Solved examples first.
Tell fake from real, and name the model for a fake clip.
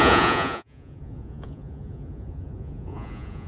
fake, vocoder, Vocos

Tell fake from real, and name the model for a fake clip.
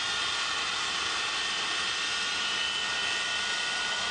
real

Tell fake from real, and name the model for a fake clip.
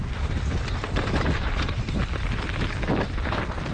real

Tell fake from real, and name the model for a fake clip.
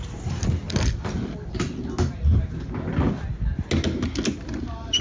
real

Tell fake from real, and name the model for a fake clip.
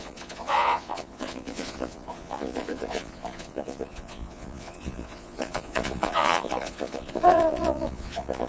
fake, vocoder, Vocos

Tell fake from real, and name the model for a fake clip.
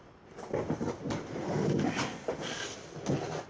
real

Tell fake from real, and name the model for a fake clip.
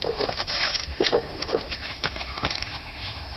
fake, autoencoder, DAC-VAE